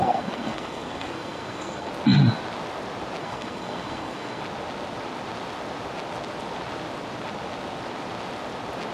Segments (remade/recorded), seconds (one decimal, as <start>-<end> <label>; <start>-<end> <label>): 0.0-1.9 remade; 1.9-3.2 recorded; 3.2-4.4 remade; 4.4-8.9 recorded